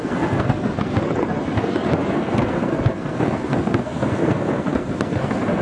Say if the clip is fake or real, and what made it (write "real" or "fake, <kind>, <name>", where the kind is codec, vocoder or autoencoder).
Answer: fake, codec, SNAC